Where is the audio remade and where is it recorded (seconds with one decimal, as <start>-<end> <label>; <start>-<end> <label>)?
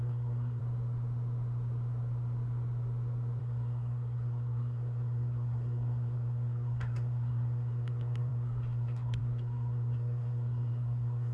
0.0-0.6 remade; 0.6-3.4 recorded; 3.4-11.3 remade